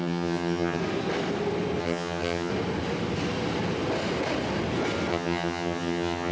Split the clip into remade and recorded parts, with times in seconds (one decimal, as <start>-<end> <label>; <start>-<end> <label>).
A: 0.0-0.8 remade; 0.8-1.8 recorded; 1.8-2.5 remade; 2.5-5.1 recorded; 5.1-6.3 remade